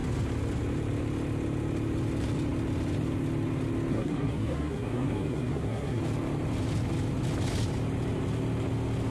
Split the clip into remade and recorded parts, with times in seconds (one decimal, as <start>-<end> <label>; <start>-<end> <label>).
0.0-3.9 recorded; 3.9-6.0 remade; 6.0-9.1 recorded